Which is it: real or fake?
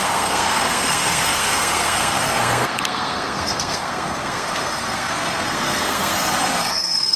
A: fake